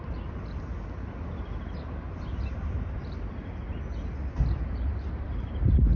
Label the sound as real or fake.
real